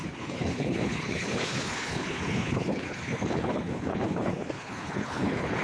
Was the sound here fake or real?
fake